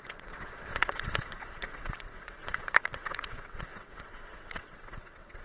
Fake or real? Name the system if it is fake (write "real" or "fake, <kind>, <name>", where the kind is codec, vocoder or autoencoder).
fake, vocoder, WaveNeXt